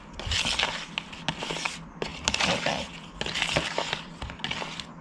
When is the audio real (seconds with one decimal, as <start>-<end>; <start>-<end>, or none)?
0.0-5.0